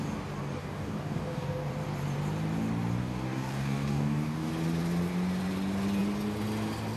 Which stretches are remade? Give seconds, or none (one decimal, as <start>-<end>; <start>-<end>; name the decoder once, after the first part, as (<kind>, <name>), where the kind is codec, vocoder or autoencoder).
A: 0.6-1.7 (codec, DAC); 3.0-4.5